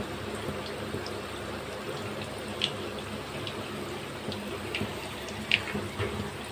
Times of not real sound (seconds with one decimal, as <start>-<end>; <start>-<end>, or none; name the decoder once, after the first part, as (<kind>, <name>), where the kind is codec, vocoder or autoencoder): 4.5-5.3 (vocoder, BigVGAN v2)